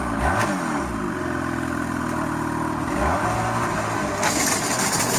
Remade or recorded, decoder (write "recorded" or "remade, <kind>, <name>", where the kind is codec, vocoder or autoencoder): recorded